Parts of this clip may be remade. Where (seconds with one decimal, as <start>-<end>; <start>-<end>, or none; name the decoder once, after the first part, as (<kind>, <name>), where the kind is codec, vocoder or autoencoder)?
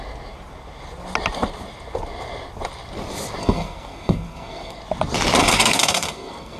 3.4-4.8 (codec, SNAC); 5.4-6.6